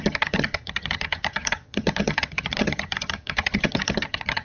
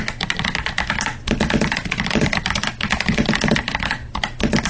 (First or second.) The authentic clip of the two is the second